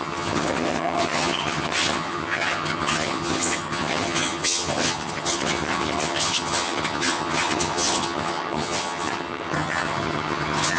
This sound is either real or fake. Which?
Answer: fake